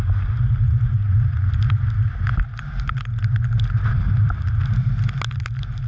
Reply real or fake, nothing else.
real